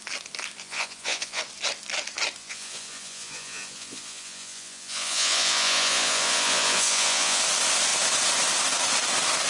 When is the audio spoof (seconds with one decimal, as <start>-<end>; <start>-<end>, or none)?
0.6-1.4; 2.4-7.4

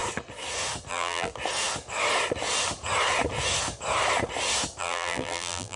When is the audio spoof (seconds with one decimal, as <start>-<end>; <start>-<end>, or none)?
0.9-1.3; 4.8-5.8

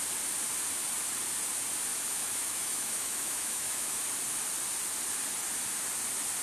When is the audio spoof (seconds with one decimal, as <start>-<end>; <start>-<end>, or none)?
1.9-4.0

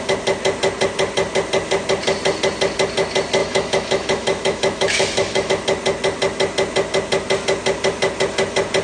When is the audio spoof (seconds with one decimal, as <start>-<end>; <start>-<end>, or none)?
3.4-5.5